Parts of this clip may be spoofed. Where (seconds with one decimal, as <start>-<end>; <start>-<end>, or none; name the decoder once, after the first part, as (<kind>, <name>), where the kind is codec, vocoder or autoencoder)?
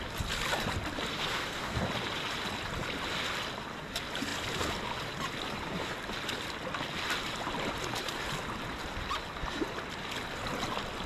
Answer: 1.1-1.8 (codec, SNAC)